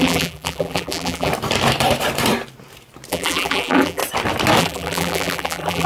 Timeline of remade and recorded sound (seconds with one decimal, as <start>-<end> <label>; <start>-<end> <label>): 0.0-1.3 remade; 1.3-3.1 recorded; 3.1-4.0 remade; 4.0-4.6 recorded; 4.6-5.9 remade